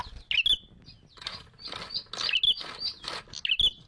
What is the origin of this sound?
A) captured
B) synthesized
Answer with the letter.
A